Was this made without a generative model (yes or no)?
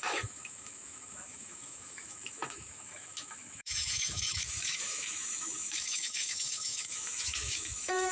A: no